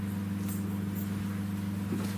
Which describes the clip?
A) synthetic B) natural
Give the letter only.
B